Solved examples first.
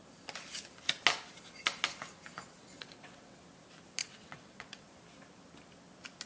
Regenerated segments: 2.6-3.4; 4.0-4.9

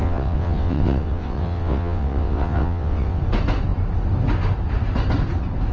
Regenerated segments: 0.0-3.2

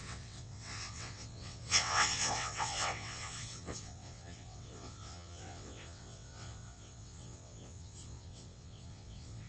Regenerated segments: 0.0-9.5

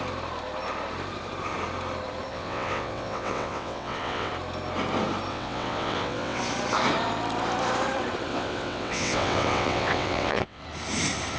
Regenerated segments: 2.3-4.3; 5.3-6.4; 8.3-10.6

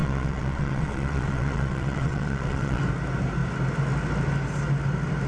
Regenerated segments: 0.0-2.8

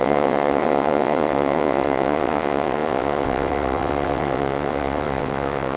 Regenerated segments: 0.0-5.8

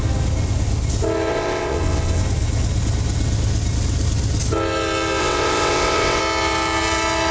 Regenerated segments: 1.3-2.2; 5.2-6.2